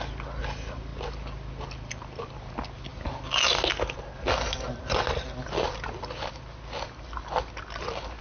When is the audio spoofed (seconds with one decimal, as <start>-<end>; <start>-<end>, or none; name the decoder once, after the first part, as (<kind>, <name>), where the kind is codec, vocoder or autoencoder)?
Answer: none